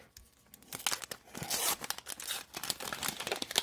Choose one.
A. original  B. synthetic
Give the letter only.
A